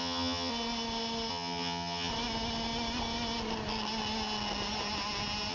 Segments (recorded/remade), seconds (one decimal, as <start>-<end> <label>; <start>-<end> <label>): 0.0-0.5 remade; 0.5-1.3 recorded; 1.3-2.1 remade; 2.1-5.5 recorded